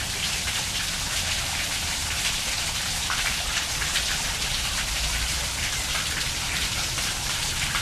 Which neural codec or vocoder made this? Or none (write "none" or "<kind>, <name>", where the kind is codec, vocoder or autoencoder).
vocoder, BigVGAN v2